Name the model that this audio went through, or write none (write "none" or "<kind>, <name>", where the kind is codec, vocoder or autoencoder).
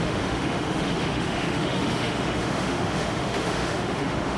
autoencoder, DAC-VAE